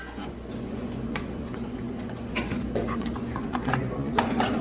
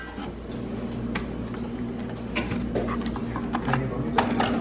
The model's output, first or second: first